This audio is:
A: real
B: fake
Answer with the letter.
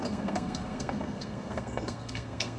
B